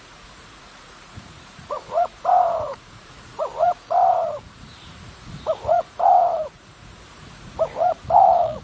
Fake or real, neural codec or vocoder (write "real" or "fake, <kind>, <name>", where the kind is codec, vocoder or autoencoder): fake, vocoder, Vocos